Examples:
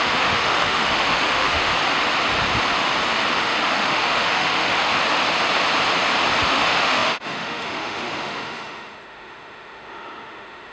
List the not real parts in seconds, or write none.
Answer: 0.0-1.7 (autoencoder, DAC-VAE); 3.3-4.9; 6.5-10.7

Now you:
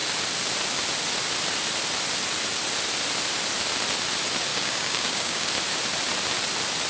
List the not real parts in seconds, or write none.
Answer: 4.5-5.5 (codec, DAC)